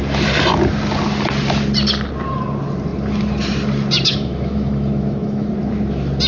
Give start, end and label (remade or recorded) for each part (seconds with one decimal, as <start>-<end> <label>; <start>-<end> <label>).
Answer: 0.0-4.1 recorded; 4.1-5.5 remade; 5.5-6.3 recorded